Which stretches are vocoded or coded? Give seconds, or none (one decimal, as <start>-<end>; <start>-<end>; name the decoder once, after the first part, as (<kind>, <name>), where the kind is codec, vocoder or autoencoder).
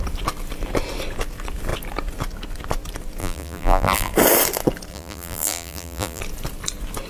3.2-4.1 (vocoder, BigVGAN v2); 4.9-6.2